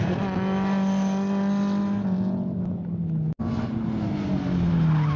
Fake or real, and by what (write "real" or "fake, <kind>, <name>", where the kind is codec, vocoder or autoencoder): real